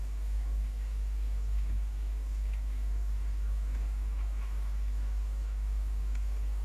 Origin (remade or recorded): remade